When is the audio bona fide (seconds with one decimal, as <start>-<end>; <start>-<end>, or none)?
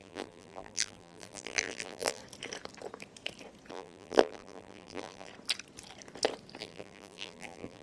2.2-3.7; 5.3-6.6